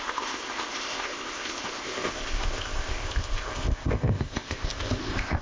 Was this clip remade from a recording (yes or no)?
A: yes